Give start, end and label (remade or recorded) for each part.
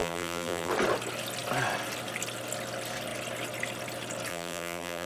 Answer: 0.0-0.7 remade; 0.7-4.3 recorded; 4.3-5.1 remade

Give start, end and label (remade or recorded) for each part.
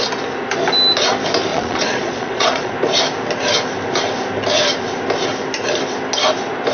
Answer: 0.0-1.5 recorded; 1.5-2.7 remade; 2.7-6.7 recorded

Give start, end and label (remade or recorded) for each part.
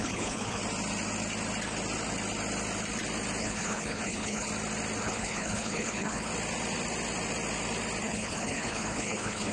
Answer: 0.0-0.6 remade; 0.6-3.4 recorded; 3.4-4.5 remade; 4.5-5.0 recorded; 5.0-6.3 remade; 6.3-8.0 recorded; 8.0-9.5 remade